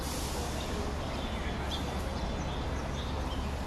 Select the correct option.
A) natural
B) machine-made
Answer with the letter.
A